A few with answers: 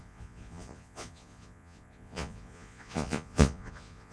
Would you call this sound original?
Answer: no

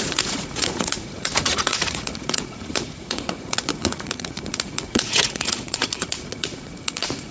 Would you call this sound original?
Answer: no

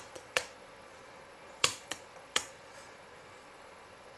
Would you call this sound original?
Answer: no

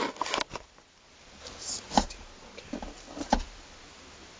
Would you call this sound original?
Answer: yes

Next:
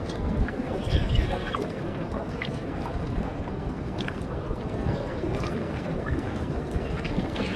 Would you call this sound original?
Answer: no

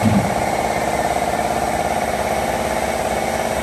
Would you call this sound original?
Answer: yes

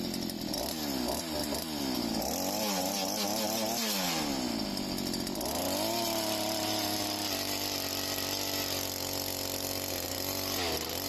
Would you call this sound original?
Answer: yes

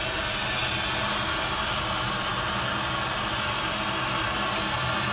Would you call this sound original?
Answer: yes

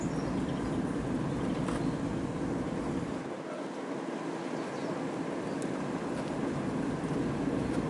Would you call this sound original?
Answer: yes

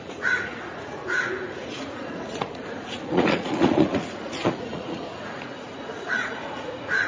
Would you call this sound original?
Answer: no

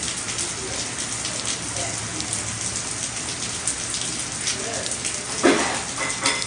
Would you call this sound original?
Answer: yes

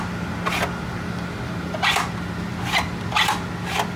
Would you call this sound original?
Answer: yes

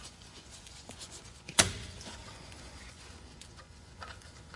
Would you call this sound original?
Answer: no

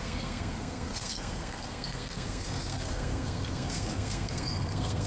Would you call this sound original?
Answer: no